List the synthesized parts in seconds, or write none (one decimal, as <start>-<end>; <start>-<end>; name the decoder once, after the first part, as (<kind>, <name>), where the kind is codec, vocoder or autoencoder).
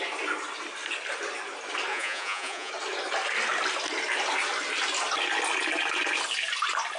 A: 1.9-2.7 (vocoder, Vocos)